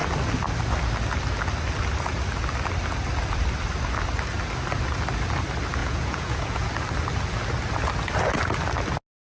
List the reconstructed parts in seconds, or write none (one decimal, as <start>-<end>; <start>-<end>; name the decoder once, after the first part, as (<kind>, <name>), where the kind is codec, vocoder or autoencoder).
5.8-6.7 (vocoder, Vocos)